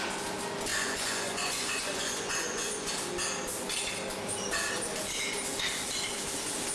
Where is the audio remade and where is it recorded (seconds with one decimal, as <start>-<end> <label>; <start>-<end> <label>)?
0.0-0.7 recorded; 0.7-2.9 remade; 2.9-6.7 recorded